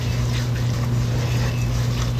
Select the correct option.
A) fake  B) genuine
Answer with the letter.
B